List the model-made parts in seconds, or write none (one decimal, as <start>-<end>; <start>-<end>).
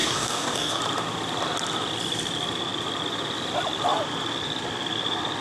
0.0-0.8